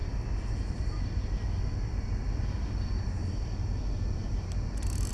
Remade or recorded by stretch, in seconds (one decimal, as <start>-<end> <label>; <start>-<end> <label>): 0.0-5.1 recorded